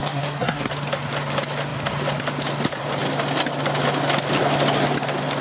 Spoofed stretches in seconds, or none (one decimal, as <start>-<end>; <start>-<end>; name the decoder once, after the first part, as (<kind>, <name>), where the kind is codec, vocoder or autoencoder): 0.0-0.7 (codec, SNAC)